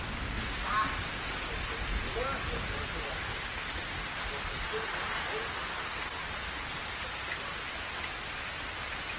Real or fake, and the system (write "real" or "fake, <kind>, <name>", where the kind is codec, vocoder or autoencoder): real